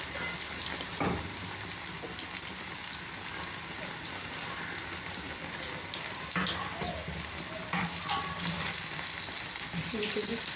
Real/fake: real